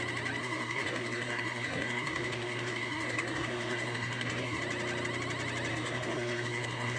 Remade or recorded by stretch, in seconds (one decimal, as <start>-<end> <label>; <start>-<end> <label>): 0.0-0.4 recorded; 0.4-4.6 remade; 4.6-5.7 recorded; 5.7-7.0 remade